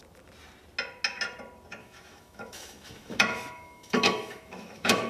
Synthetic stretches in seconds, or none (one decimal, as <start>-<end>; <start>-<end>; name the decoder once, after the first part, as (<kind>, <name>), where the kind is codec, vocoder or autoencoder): 1.8-5.1 (autoencoder, DAC-VAE)